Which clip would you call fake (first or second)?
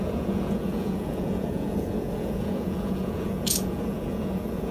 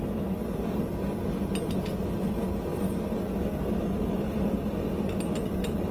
first